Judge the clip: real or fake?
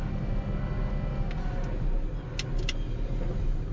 real